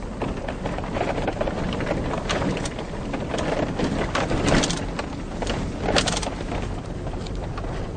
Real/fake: real